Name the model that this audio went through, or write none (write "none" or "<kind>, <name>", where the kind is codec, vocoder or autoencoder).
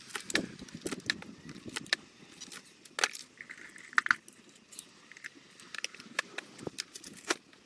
none